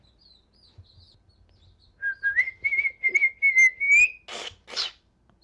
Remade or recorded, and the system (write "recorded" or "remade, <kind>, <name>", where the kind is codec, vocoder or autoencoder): recorded